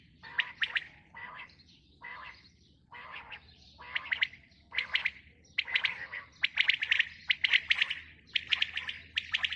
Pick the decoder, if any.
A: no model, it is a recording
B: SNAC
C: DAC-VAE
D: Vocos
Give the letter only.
A